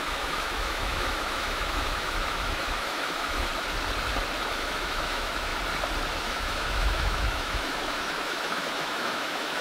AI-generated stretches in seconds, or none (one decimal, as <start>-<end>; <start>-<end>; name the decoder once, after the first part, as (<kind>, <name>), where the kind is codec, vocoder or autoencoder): 0.0-3.5 (autoencoder, DAC-VAE); 4.5-5.5; 6.2-9.6